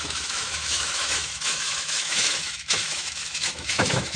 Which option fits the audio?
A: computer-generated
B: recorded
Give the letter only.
A